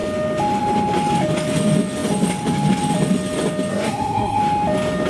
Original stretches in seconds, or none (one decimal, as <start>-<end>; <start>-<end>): 0.0-3.7; 4.4-5.1